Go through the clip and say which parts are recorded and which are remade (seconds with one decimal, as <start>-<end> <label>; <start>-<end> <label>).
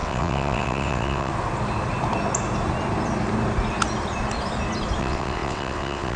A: 0.0-1.3 remade; 1.3-5.0 recorded; 5.0-6.2 remade